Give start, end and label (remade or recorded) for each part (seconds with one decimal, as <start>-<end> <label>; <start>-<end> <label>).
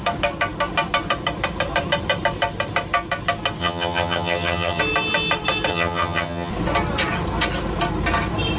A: 0.0-3.6 recorded; 3.6-4.8 remade; 4.8-5.7 recorded; 5.7-6.5 remade; 6.5-8.6 recorded